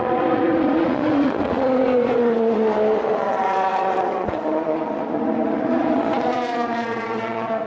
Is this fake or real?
fake